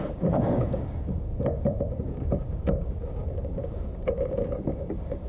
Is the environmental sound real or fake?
fake